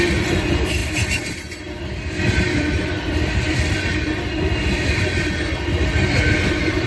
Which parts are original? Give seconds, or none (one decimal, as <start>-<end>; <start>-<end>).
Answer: none